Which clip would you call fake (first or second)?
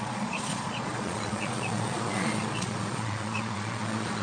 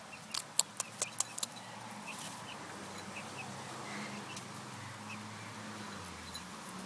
first